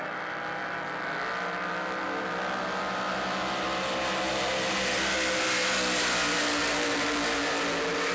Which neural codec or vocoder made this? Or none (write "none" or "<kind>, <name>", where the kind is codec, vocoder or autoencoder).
none